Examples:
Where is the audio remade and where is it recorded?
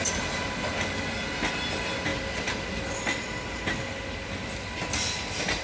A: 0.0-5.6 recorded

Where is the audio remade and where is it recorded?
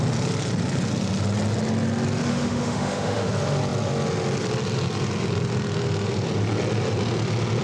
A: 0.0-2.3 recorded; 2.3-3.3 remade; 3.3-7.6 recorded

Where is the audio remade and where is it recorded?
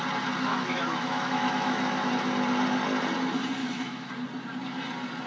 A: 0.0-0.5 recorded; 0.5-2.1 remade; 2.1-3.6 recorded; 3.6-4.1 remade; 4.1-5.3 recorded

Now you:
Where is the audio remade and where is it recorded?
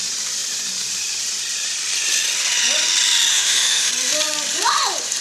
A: 0.0-3.3 recorded; 3.3-3.9 remade; 3.9-5.2 recorded